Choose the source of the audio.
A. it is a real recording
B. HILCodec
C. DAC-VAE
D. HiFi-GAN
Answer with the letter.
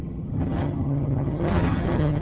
D